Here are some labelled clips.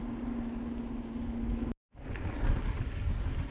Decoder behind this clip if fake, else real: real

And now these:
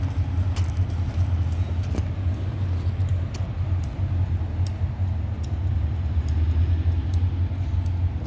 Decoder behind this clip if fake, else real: real